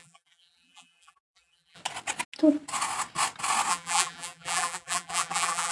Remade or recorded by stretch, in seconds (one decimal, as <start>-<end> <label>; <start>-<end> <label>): 0.0-1.8 remade; 1.8-3.7 recorded; 3.7-5.7 remade